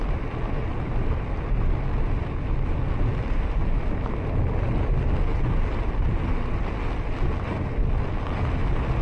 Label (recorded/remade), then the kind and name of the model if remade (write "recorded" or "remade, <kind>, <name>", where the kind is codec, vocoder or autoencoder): recorded